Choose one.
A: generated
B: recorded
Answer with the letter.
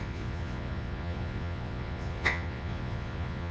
A